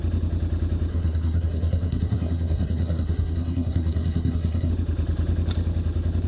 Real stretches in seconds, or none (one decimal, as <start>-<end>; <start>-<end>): 0.0-0.9; 4.7-6.3